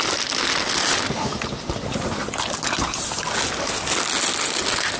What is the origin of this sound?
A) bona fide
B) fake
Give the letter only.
A